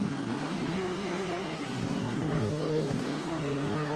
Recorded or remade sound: remade